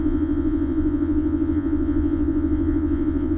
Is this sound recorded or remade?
remade